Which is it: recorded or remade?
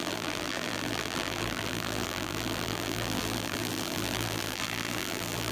remade